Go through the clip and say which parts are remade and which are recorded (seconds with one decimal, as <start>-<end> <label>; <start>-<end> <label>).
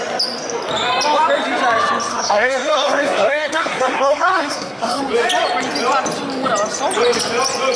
0.0-2.1 recorded; 2.1-5.0 remade; 5.0-7.8 recorded